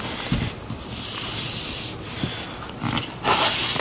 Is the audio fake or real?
real